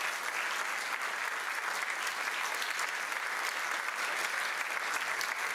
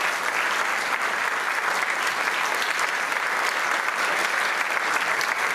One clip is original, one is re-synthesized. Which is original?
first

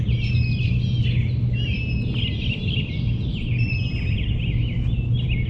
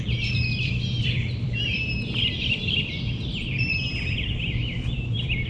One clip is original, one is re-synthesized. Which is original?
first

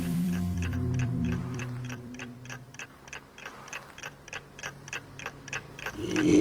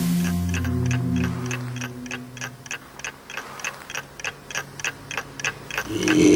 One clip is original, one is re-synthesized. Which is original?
second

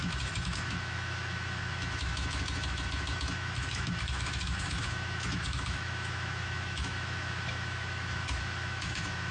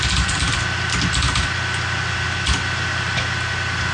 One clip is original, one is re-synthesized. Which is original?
second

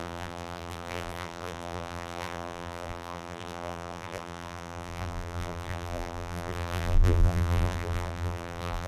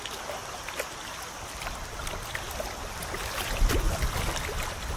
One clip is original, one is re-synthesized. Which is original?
second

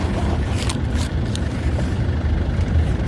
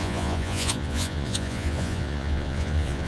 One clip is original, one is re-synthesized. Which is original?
first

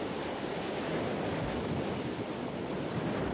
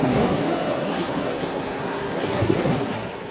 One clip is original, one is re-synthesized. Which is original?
first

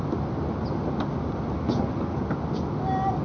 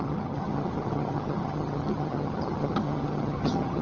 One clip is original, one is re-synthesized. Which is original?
first